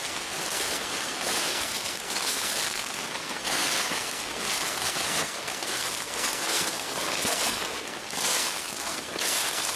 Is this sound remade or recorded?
remade